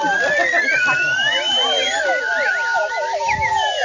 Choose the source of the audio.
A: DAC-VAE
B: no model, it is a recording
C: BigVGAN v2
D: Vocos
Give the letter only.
C